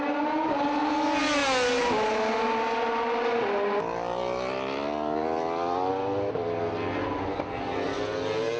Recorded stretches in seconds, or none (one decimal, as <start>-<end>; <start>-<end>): 0.0-8.6